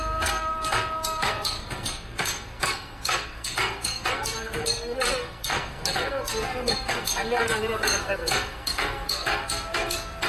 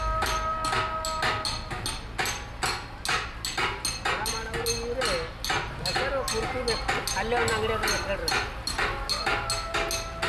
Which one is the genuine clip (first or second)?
second